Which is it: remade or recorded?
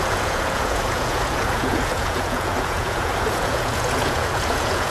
remade